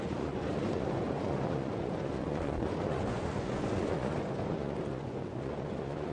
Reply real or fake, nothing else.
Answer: fake